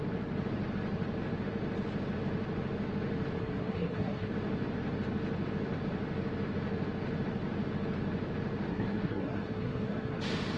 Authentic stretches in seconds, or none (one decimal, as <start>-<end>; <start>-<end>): 0.0-3.4; 4.3-8.7; 10.2-10.6